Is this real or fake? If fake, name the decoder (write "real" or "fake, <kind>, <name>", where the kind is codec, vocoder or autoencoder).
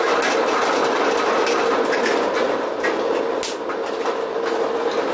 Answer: real